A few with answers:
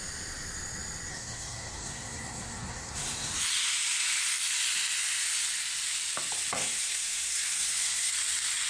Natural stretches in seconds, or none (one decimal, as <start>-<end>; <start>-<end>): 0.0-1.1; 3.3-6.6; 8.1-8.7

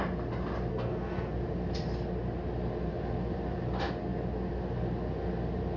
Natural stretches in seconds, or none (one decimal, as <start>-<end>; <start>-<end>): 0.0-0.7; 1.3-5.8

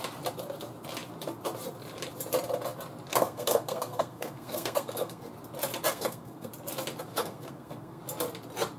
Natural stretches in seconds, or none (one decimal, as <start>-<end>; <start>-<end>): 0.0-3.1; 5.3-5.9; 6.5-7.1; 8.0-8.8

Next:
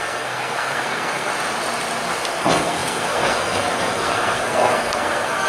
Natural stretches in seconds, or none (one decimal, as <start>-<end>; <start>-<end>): 1.3-2.4

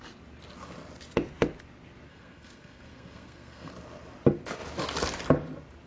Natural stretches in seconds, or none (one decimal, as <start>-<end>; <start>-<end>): 0.0-2.1; 3.7-5.9

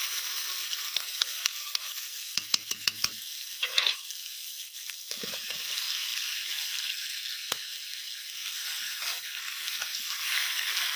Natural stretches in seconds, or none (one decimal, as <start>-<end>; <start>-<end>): none

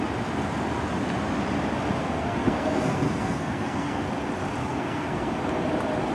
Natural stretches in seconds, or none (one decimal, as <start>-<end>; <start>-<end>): 0.0-2.0; 4.0-4.6; 5.4-6.1

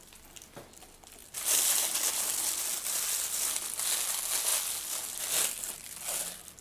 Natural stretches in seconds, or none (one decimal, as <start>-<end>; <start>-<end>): 0.0-6.6